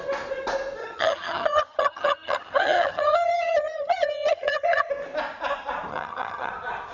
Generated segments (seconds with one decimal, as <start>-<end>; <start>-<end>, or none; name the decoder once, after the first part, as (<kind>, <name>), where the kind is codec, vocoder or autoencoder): 0.8-4.9 (vocoder, HiFi-GAN); 5.9-6.5